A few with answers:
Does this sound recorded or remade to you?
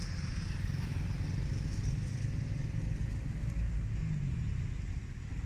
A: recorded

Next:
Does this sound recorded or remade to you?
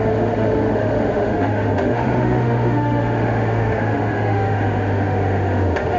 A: remade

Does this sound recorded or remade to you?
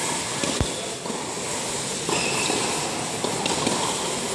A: recorded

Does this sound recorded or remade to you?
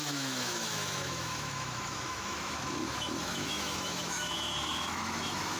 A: remade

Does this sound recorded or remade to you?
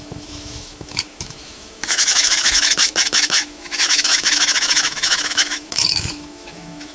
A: remade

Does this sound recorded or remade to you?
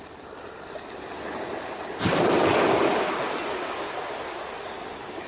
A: recorded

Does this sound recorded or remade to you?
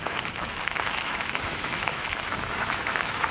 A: remade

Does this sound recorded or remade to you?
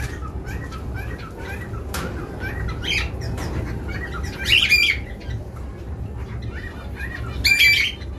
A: recorded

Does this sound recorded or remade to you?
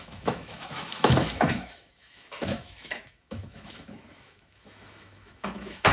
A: remade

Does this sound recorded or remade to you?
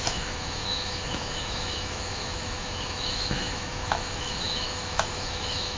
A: remade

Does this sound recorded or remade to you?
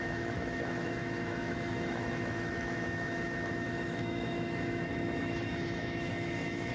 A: remade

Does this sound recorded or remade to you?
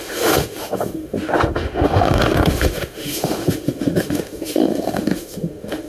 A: remade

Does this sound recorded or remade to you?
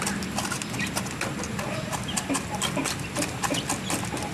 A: recorded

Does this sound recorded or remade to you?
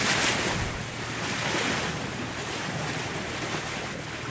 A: recorded